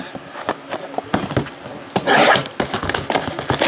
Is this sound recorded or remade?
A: recorded